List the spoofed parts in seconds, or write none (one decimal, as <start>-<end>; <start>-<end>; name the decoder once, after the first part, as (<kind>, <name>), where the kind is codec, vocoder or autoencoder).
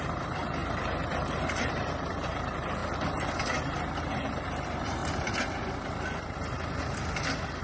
0.0-2.8 (vocoder, BigVGAN v2); 4.0-5.0